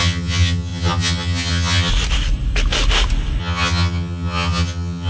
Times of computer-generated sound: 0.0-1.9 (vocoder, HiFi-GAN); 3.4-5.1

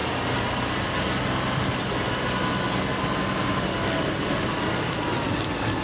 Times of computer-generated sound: none

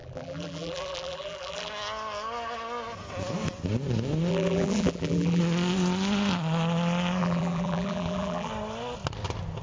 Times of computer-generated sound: 0.0-1.7 (vocoder, BigVGAN v2); 4.3-5.4; 7.2-8.5

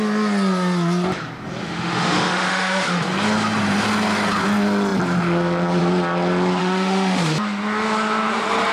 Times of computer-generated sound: 1.6-3.0 (autoencoder, DAC-VAE); 6.6-7.2

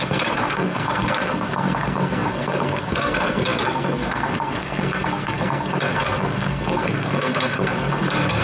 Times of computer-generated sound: 0.0-8.4 (codec, SNAC)

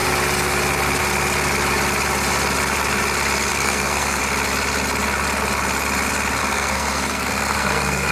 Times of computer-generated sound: 3.5-4.2 (codec, SNAC); 6.4-8.1